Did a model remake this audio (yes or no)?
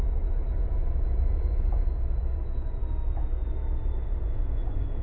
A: yes